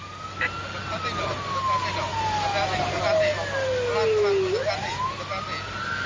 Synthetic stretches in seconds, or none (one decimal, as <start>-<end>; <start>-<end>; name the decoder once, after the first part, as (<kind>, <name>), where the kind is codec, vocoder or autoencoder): none